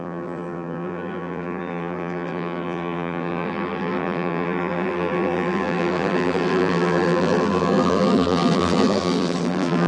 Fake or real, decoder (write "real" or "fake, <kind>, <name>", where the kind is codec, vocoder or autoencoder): fake, vocoder, BigVGAN v2